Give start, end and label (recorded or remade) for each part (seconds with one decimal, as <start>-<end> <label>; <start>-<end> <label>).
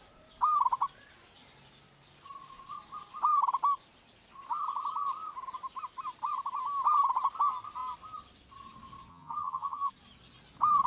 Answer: 0.0-9.1 recorded; 9.1-9.9 remade; 9.9-10.9 recorded